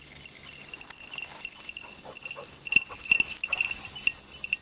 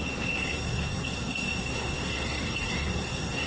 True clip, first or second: first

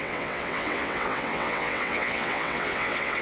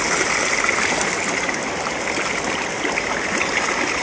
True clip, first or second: second